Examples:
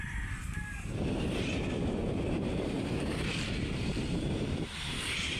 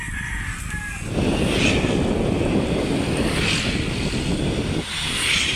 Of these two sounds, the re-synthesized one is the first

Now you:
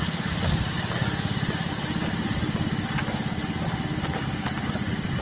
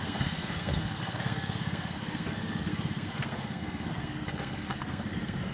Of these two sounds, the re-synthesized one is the second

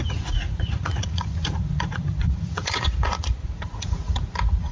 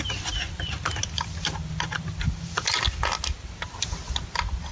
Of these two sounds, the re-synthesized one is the first